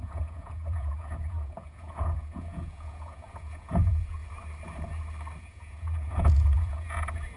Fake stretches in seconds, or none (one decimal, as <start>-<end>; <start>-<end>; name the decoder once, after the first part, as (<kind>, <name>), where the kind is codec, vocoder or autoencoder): 0.0-4.2 (vocoder, Vocos); 5.4-7.4